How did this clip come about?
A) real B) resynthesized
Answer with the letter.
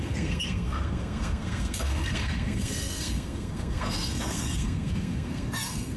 B